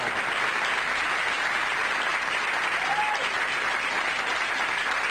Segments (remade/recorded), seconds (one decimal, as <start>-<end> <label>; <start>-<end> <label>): 0.0-5.1 recorded